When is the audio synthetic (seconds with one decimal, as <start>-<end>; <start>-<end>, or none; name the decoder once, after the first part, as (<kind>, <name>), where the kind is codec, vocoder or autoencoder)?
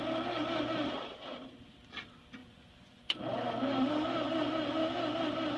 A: 2.4-3.2 (vocoder, Vocos)